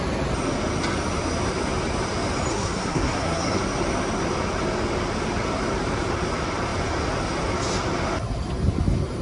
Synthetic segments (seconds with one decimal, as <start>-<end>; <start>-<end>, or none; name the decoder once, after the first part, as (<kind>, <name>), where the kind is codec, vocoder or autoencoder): 2.5-3.6 (codec, SNAC)